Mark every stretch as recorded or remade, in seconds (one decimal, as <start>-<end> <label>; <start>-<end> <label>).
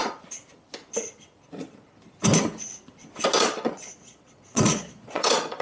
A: 0.0-3.4 recorded; 3.4-5.6 remade